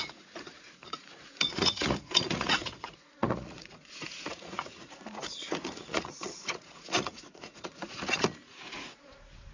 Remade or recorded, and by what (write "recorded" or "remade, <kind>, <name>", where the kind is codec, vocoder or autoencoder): remade, vocoder, Vocos